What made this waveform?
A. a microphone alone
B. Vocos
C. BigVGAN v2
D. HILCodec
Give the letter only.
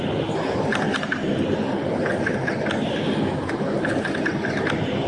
A